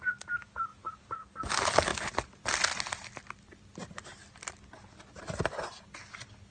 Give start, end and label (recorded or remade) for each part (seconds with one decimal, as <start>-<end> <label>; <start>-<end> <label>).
0.0-6.5 recorded